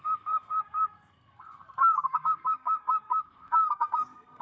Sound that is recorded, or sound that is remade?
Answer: remade